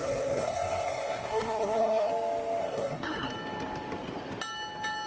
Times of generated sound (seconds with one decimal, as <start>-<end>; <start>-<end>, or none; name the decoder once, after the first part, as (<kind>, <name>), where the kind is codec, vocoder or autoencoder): 0.0-2.1 (codec, SNAC); 2.6-3.3